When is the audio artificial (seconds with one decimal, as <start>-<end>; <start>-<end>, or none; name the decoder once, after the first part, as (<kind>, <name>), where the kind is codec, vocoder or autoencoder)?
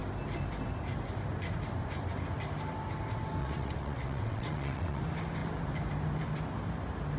3.4-5.0 (vocoder, WaveNeXt)